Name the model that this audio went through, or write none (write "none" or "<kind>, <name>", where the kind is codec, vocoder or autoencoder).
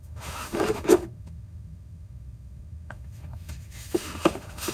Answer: autoencoder, DAC-VAE